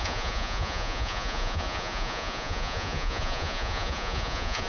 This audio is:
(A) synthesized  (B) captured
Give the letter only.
A